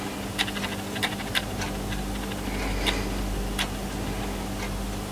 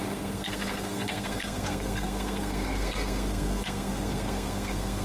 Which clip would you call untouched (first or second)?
first